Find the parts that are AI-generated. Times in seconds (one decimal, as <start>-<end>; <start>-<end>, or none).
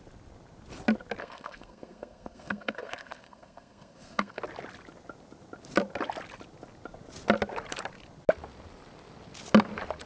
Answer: 1.2-4.4